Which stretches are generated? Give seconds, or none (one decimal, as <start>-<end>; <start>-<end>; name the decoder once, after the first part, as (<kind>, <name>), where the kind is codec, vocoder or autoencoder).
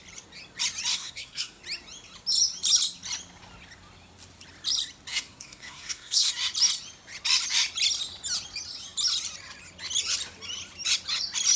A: 0.9-1.6 (codec, SNAC); 5.1-6.3